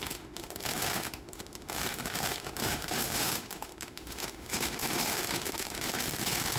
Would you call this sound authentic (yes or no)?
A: no